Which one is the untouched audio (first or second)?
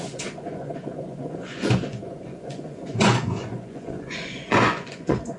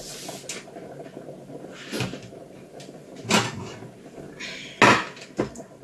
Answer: second